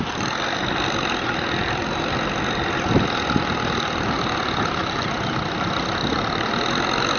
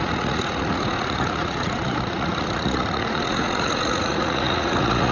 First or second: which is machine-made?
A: second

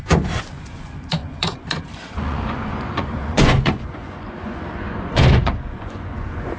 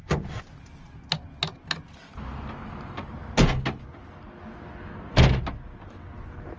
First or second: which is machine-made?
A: first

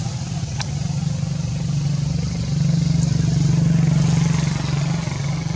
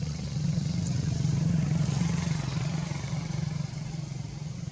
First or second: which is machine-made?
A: second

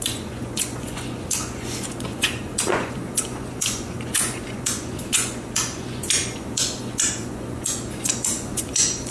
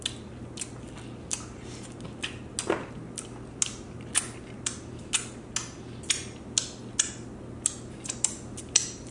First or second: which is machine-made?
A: first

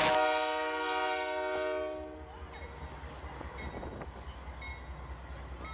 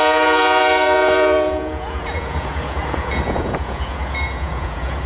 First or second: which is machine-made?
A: second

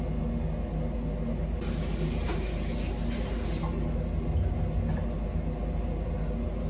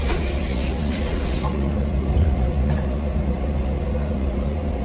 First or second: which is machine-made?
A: second